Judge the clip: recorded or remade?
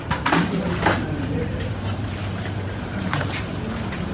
remade